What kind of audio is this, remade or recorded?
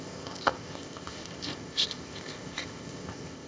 remade